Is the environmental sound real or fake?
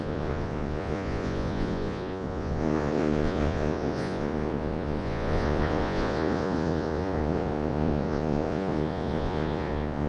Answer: fake